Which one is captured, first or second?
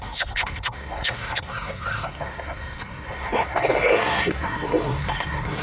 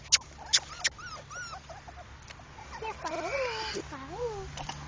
second